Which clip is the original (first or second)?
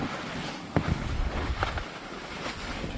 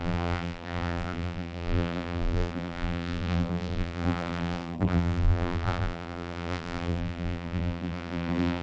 first